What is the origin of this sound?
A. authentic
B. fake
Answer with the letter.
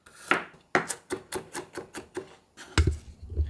A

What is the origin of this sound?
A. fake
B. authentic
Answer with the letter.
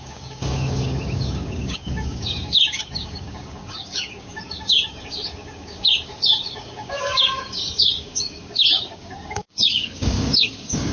A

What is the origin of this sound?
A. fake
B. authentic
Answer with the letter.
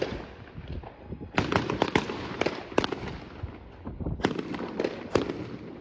B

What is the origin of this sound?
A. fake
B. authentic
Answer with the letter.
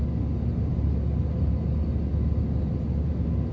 B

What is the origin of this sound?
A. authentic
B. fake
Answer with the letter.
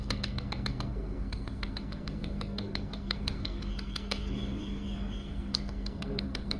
B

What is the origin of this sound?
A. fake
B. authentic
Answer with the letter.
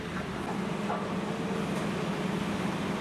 B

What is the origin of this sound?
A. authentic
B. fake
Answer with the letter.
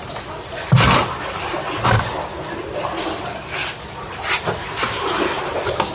A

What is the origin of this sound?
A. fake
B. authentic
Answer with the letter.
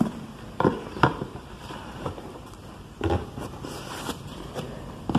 A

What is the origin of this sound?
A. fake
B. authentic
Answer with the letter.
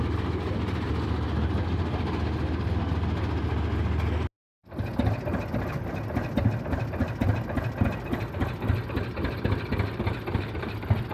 B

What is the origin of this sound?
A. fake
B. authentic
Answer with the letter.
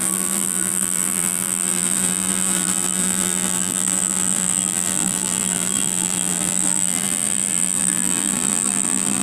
A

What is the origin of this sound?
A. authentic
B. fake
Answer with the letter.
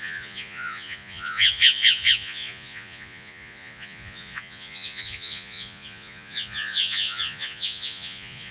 B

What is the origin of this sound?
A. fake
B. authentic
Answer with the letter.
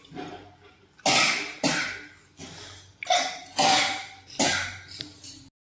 B